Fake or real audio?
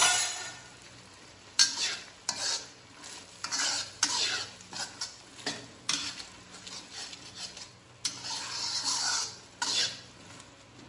real